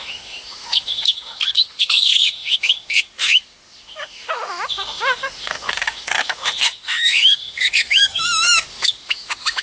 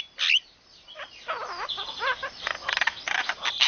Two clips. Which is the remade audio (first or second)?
first